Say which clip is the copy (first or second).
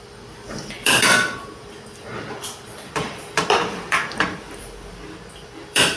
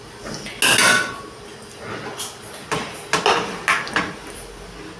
first